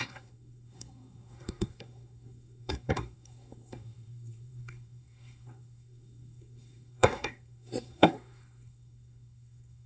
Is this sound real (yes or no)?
no